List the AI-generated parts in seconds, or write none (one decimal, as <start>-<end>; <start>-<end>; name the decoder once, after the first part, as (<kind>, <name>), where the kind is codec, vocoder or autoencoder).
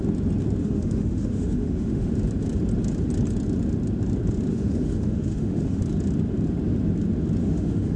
0.6-2.1 (autoencoder, DAC-VAE); 4.5-5.8; 7.4-8.0